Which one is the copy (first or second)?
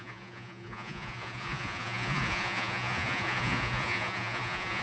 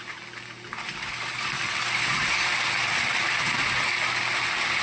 first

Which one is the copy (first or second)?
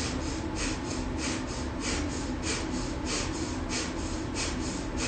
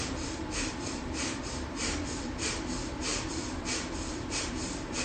second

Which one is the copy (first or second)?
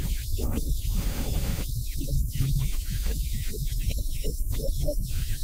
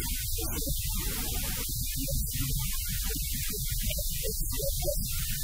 first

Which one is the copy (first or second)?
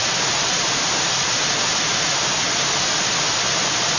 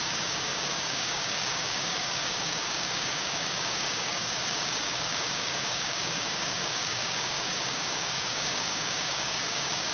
second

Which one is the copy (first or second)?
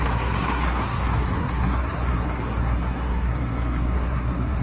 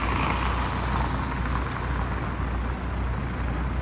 first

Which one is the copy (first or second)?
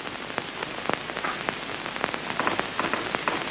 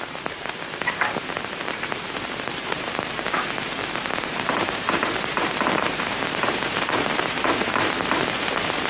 second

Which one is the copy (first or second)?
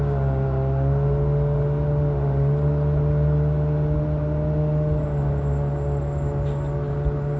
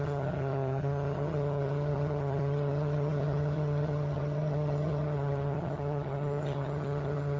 second